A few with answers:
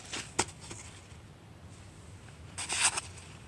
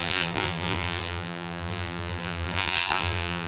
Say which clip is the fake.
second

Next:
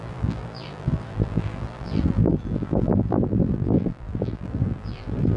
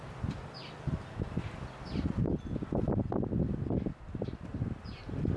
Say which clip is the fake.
first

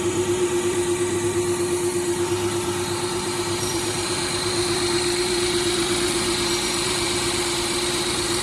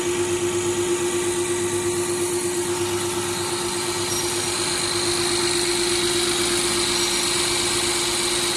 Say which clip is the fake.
first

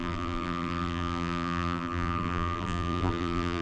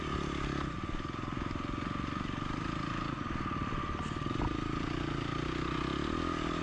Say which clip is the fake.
first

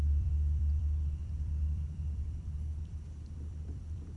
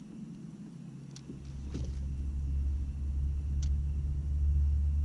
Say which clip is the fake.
first